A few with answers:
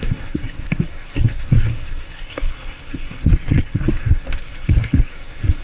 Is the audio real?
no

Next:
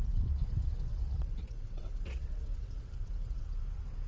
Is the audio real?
no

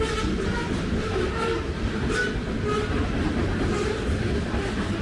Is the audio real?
yes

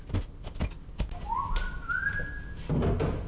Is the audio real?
yes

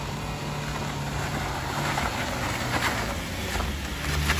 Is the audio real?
yes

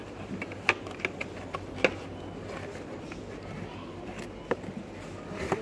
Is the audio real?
yes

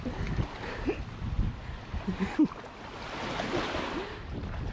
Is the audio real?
yes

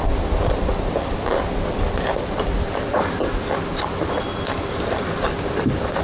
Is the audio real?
yes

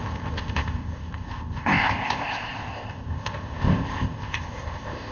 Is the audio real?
no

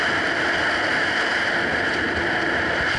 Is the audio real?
yes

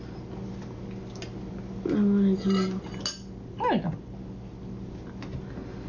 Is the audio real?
yes